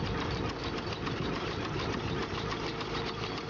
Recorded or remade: recorded